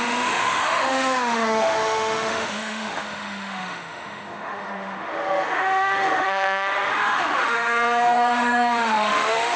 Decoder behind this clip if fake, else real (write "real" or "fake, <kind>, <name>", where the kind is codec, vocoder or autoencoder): fake, autoencoder, DAC-VAE